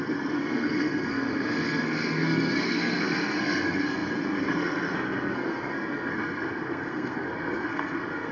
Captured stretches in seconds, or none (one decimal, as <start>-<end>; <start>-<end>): none